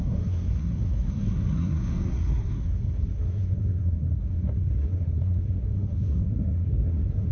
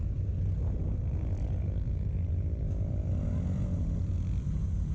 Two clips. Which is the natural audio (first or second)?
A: second